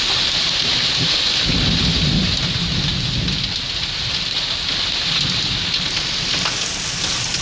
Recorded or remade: recorded